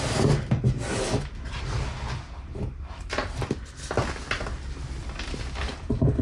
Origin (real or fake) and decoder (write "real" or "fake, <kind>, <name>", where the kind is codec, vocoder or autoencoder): real